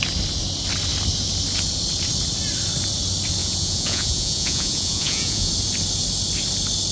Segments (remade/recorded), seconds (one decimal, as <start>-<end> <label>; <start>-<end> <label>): 0.0-3.4 recorded; 3.4-5.5 remade; 5.5-6.9 recorded